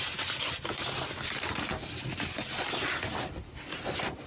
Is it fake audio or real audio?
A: real